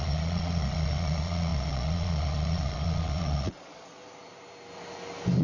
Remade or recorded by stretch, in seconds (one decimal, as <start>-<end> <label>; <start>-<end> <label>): 0.0-4.0 remade; 4.0-5.4 recorded